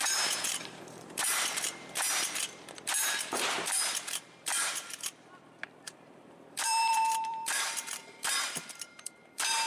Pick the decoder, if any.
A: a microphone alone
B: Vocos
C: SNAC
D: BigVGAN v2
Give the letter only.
D